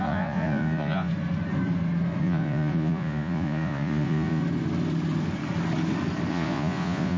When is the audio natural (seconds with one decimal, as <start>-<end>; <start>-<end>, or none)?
1.1-2.2; 4.4-6.3

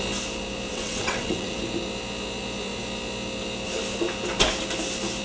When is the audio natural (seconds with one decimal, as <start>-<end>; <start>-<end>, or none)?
0.0-0.7; 1.6-5.2